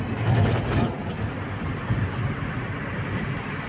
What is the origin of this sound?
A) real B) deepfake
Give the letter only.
A